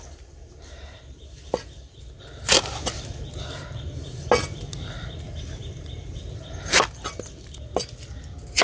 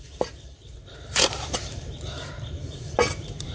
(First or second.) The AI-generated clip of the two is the second